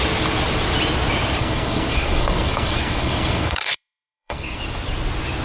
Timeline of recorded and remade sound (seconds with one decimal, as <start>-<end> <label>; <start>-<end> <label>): 0.0-1.4 recorded; 1.4-4.6 remade; 4.6-5.4 recorded